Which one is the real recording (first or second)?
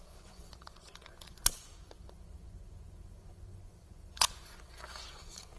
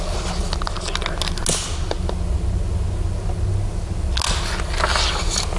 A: second